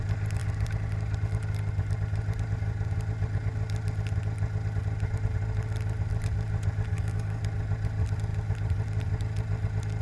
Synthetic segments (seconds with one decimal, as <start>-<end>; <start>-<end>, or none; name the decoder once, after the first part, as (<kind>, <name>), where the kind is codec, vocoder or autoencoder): 6.9-7.4 (codec, DAC)